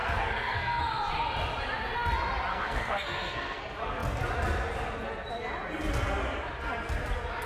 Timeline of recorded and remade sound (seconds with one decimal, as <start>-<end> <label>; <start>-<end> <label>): 0.0-0.8 remade; 0.8-2.5 recorded; 2.5-3.6 remade; 3.6-7.5 recorded